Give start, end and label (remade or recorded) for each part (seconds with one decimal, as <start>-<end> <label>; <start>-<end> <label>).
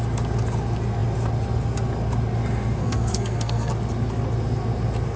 0.0-2.8 recorded; 2.8-3.7 remade; 3.7-5.2 recorded